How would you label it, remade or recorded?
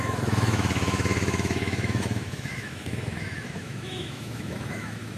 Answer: remade